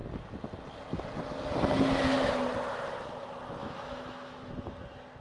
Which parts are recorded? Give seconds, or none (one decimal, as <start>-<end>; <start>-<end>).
0.0-3.6; 4.5-5.2